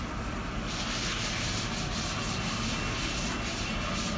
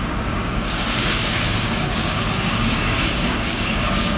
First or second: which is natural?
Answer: first